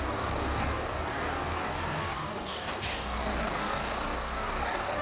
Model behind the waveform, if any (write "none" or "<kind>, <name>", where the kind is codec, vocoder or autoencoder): codec, DAC